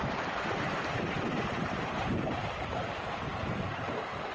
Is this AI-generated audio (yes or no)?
yes